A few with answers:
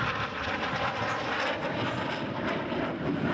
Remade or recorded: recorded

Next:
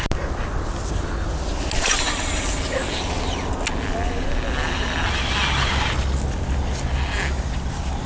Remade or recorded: recorded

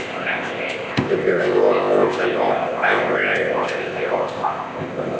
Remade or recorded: remade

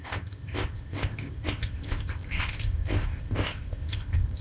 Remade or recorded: remade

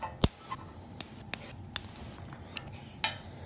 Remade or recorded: recorded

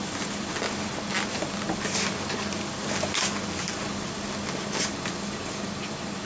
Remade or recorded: recorded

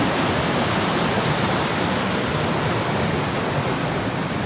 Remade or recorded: recorded